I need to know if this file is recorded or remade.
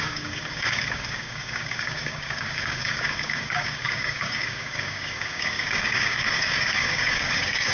remade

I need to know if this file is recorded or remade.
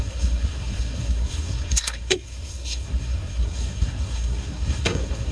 remade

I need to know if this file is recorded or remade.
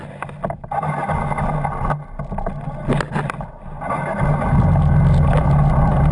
recorded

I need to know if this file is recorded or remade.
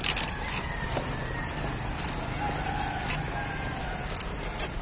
recorded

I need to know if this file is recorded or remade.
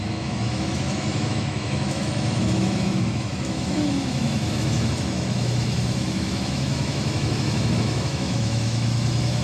remade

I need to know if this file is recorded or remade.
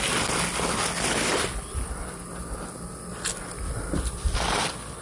recorded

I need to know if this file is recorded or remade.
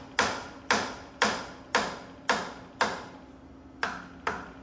recorded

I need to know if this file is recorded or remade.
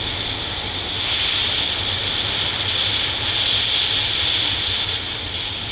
recorded